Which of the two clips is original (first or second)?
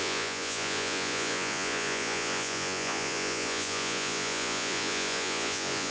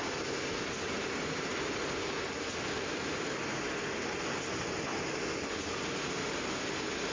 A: second